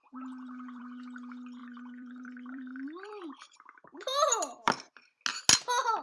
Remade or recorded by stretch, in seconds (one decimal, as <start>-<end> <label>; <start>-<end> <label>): 0.0-0.8 remade; 0.8-1.6 recorded; 1.6-4.9 remade; 4.9-6.0 recorded